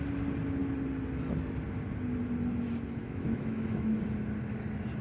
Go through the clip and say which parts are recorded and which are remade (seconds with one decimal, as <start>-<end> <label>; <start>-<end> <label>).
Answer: 0.0-3.0 recorded; 3.0-4.0 remade; 4.0-5.0 recorded